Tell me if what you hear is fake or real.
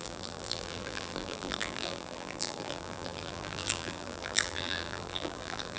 fake